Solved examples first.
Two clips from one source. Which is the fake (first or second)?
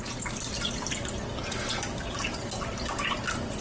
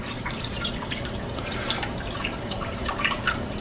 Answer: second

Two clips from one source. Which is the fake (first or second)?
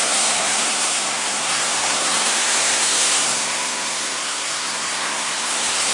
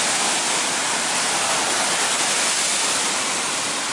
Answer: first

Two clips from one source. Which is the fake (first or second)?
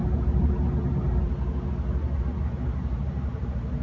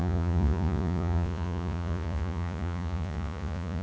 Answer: second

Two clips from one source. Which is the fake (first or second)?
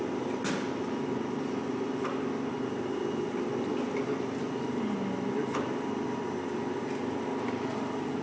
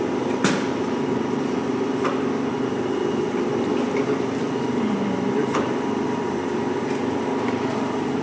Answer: second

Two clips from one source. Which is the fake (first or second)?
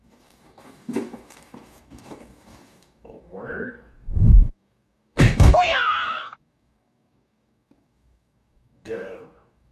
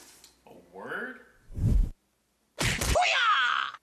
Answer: first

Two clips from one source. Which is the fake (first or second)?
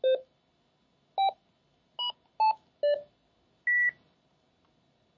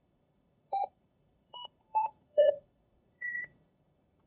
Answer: second